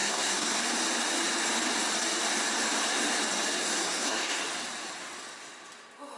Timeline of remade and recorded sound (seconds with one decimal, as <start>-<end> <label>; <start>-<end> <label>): 0.0-0.6 remade; 0.6-3.6 recorded; 3.6-4.4 remade; 4.4-6.2 recorded